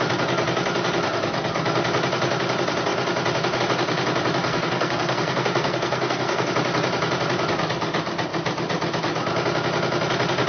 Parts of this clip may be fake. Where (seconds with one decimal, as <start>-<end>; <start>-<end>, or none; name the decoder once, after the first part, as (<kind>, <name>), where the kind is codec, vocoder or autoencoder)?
4.4-6.5 (codec, SNAC)